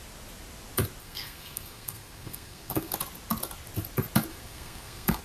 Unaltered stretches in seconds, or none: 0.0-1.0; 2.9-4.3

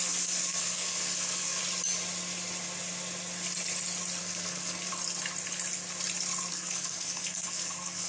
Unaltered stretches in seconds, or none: 1.6-4.2; 4.9-6.5

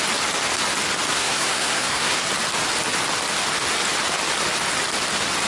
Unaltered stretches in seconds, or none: 0.0-1.1; 2.3-5.5

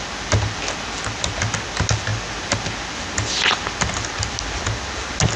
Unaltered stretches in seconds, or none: 0.0-5.4

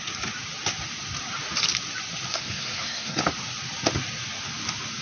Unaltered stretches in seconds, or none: 0.0-2.3; 3.2-5.0